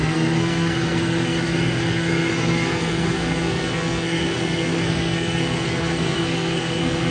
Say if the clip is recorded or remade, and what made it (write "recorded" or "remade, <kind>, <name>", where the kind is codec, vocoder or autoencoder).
remade, codec, SNAC